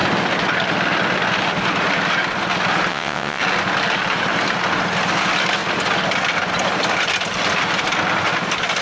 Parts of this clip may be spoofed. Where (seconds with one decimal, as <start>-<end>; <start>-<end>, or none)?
2.9-3.4